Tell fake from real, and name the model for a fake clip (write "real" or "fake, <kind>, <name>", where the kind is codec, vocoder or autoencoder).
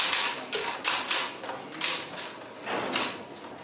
real